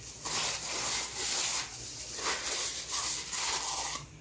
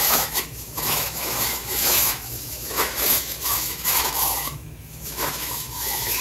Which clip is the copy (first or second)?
second